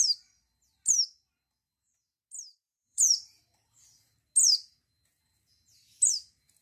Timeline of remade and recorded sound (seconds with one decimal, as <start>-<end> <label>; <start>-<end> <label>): 0.0-2.5 recorded; 2.5-3.4 remade; 3.4-6.6 recorded